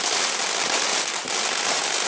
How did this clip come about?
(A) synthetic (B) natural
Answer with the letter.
B